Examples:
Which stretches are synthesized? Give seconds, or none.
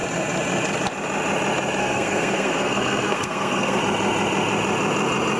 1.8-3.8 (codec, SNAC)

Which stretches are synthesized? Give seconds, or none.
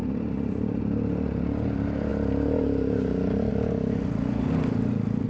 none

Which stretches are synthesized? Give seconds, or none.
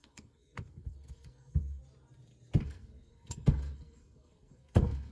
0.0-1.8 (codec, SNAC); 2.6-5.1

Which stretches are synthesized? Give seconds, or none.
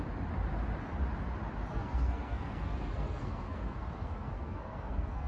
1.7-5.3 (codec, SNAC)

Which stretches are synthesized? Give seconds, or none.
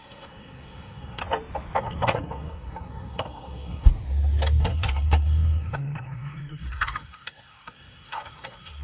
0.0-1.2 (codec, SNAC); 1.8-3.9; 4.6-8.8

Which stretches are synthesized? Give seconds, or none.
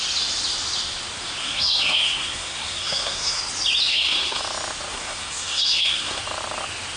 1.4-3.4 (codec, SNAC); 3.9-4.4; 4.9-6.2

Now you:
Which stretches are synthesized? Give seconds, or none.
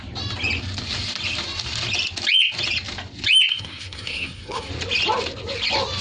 3.5-4.7 (codec, SNAC)